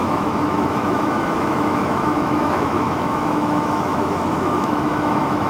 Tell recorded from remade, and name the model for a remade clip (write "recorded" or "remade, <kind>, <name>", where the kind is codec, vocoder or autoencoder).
remade, autoencoder, DAC-VAE